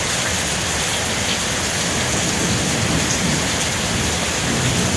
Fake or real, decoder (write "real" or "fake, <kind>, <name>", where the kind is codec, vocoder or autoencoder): real